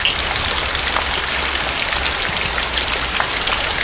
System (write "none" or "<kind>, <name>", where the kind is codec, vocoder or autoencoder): none